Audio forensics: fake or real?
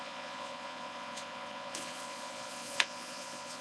fake